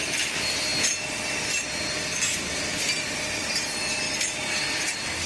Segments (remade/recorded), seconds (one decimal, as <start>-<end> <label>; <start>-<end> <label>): 0.0-5.3 recorded